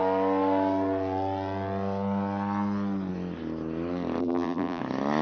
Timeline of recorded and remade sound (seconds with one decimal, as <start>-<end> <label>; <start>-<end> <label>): 0.0-4.2 recorded; 4.2-4.8 remade; 4.8-5.2 recorded